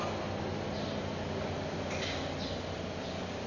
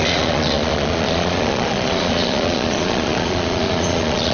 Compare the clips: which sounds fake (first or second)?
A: second